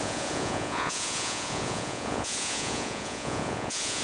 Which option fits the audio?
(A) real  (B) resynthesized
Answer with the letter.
B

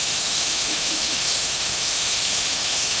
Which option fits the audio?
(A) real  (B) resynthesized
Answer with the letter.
B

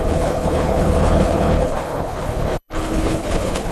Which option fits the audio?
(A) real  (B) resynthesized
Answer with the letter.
B